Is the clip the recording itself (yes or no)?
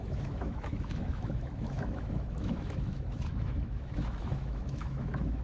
no